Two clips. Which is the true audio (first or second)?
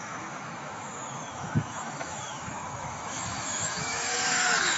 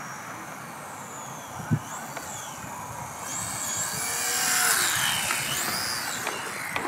second